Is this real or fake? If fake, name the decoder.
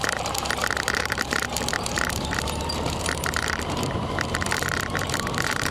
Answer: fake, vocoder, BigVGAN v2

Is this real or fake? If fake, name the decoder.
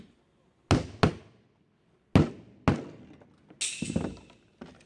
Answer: real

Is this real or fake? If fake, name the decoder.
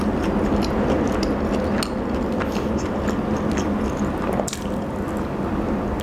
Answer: real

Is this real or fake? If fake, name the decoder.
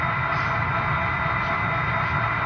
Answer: real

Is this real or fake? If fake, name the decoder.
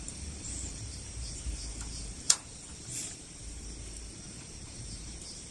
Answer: fake, vocoder, BigVGAN v2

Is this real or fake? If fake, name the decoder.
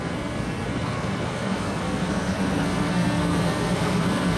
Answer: fake, codec, SNAC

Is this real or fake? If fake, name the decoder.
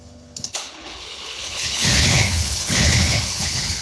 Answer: fake, codec, HILCodec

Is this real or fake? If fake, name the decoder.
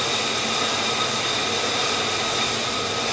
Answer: real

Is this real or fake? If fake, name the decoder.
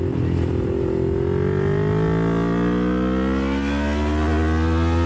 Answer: real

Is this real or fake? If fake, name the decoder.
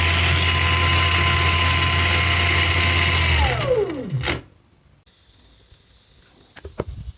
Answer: real